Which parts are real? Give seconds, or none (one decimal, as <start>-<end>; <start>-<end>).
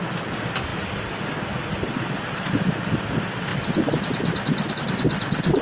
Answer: 0.0-5.6